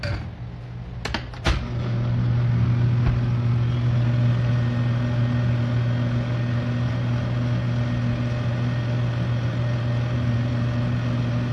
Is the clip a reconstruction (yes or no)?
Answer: no